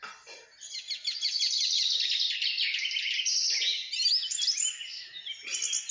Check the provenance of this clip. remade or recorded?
recorded